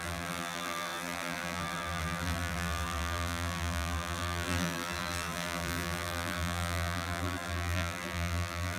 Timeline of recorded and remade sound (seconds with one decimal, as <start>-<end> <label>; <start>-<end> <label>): 0.0-8.8 remade

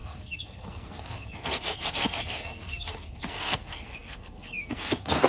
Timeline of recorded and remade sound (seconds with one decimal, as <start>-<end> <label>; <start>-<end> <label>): 0.0-5.3 remade

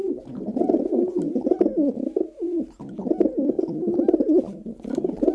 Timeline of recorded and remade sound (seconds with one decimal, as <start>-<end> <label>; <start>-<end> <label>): 0.0-5.3 recorded

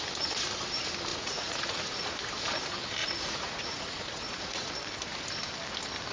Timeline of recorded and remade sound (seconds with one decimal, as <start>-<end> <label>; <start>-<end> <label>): 0.0-1.1 recorded; 1.1-2.1 remade; 2.1-3.0 recorded; 3.0-4.7 remade; 4.7-6.1 recorded

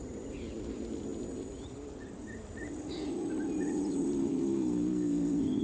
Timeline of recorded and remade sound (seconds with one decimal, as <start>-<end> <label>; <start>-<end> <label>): 0.0-4.2 recorded; 4.2-5.6 remade